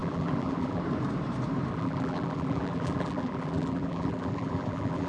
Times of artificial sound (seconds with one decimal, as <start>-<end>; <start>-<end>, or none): 0.0-0.8; 1.7-5.1